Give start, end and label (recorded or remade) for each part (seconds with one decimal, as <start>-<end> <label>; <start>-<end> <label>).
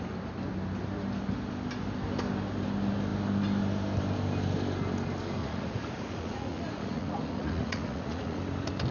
0.0-5.4 recorded; 5.4-8.4 remade; 8.4-8.9 recorded